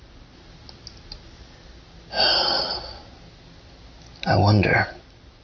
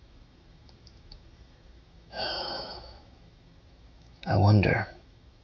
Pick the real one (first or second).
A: first